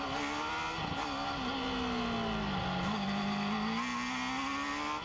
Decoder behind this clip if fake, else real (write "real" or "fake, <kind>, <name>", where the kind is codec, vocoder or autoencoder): real